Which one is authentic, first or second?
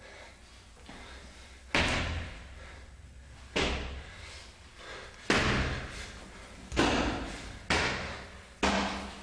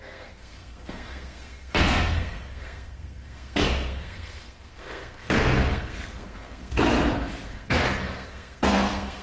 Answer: first